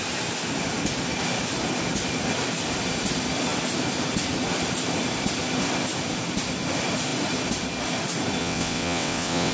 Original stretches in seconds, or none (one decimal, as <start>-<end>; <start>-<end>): 0.0-8.4